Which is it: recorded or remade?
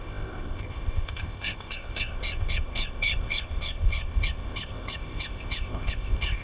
remade